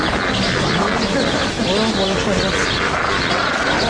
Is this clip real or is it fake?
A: real